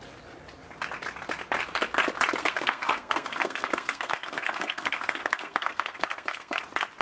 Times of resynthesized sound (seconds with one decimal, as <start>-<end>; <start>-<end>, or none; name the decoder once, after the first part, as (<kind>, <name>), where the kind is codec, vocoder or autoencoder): 2.4-6.6 (codec, SNAC)